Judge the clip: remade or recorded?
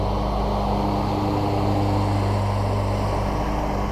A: recorded